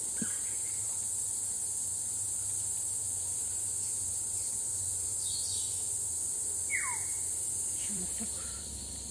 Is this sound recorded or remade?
remade